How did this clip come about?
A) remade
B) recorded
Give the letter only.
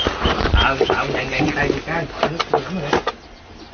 B